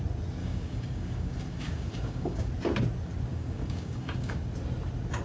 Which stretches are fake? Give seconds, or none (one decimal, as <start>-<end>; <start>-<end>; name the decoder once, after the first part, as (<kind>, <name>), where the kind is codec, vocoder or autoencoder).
0.4-2.5 (codec, DAC); 3.3-4.4